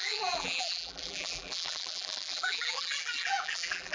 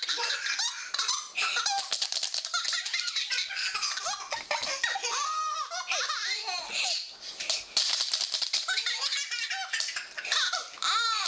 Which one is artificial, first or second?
first